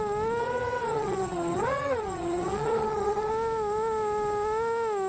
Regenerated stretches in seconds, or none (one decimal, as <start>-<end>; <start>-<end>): 0.4-3.3

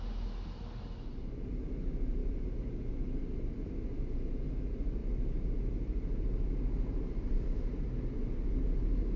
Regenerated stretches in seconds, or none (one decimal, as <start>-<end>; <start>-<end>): none